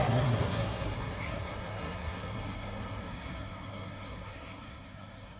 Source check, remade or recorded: remade